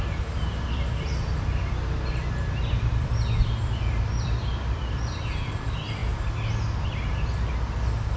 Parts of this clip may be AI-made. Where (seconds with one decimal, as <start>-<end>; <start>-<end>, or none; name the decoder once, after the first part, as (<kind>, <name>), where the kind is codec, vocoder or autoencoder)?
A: 0.0-6.0 (vocoder, BigVGAN v2)